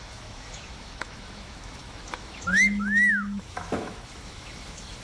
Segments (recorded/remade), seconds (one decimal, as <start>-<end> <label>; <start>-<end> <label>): 0.0-5.0 remade